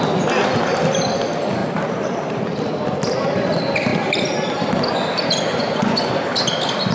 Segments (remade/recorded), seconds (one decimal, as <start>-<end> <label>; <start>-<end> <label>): 0.0-5.5 recorded; 5.5-6.1 remade; 6.1-6.9 recorded

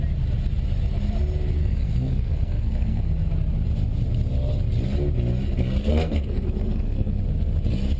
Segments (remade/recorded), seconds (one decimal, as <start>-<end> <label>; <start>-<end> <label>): 0.0-1.6 recorded; 1.6-3.1 remade; 3.1-5.8 recorded; 5.8-7.2 remade; 7.2-8.0 recorded

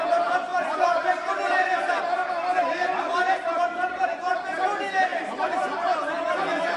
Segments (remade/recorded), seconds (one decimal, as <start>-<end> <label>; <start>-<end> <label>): 0.0-3.1 recorded; 3.1-4.3 remade; 4.3-6.8 recorded

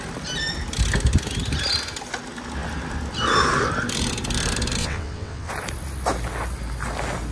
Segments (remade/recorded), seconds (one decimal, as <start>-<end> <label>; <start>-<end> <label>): 0.0-4.8 recorded; 4.8-5.5 remade; 5.5-7.3 recorded